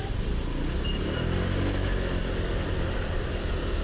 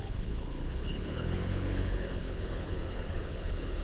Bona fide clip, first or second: first